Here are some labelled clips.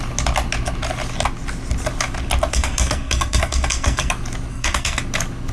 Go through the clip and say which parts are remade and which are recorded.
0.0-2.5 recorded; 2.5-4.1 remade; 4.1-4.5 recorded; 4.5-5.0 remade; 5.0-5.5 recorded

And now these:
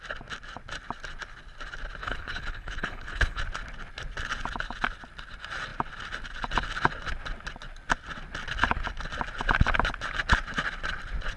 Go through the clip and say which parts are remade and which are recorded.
0.0-2.0 recorded; 2.0-3.4 remade; 3.4-11.4 recorded